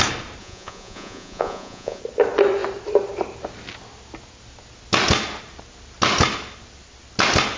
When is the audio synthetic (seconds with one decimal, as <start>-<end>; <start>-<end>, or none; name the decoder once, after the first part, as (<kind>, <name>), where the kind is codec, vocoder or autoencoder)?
0.4-2.0 (vocoder, Vocos)